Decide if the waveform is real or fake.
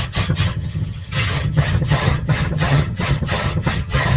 fake